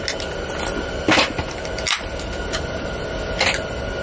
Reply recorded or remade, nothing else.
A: recorded